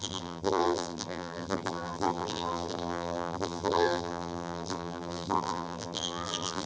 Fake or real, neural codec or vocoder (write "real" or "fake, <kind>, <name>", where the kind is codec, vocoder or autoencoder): fake, vocoder, BigVGAN v2